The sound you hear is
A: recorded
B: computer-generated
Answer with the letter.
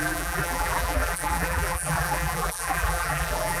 B